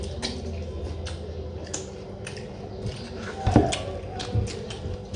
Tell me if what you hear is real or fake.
real